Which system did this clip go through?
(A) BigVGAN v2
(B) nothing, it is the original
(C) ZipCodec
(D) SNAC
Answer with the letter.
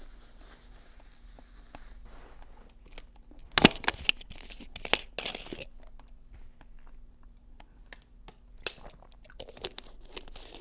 B